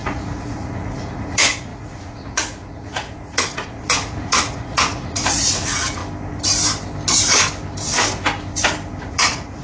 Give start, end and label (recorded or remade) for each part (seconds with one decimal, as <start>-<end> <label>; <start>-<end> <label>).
0.0-6.0 remade; 6.0-9.0 recorded; 9.0-9.6 remade